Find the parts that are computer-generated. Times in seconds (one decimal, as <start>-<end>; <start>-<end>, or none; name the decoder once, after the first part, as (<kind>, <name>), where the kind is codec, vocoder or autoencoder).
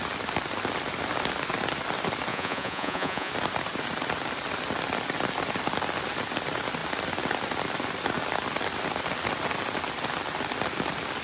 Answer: 2.3-3.3 (vocoder, Vocos)